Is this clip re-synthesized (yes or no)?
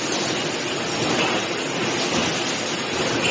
no